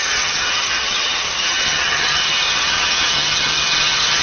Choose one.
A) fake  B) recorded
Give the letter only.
A